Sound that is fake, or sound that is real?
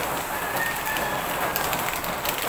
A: real